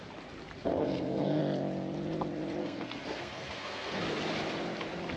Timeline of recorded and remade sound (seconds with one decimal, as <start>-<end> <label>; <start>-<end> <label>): 0.0-0.6 recorded; 0.6-1.4 remade; 1.4-2.6 recorded; 2.6-4.0 remade; 4.0-5.2 recorded